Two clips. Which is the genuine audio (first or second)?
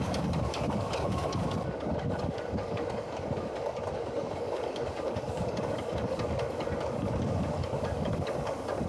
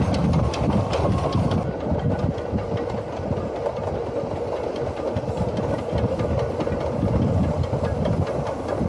second